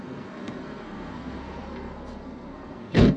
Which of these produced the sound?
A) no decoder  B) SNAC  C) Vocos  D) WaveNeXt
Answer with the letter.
B